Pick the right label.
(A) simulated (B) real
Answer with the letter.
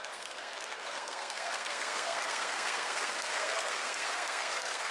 A